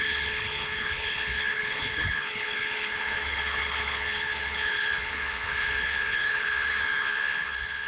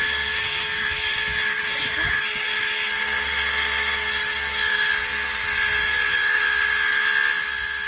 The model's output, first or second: first